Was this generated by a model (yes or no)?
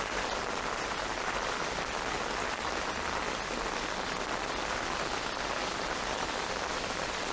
no